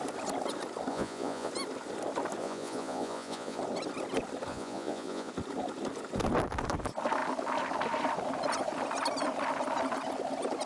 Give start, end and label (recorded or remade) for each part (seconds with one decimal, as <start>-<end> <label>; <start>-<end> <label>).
0.0-0.9 recorded; 0.9-1.5 remade; 1.5-2.4 recorded; 2.4-3.6 remade; 3.6-4.5 recorded; 4.5-5.3 remade; 5.3-10.7 recorded